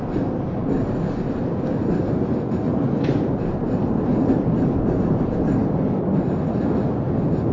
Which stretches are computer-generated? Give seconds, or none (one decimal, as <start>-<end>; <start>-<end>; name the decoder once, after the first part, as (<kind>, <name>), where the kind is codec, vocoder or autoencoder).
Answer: none